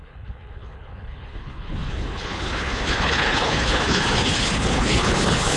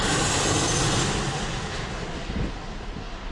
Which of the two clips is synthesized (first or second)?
first